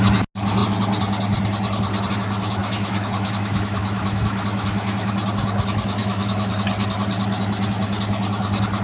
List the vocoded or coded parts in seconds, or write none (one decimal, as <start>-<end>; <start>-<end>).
2.6-5.1; 6.0-6.5